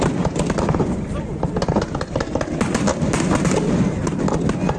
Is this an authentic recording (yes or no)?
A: yes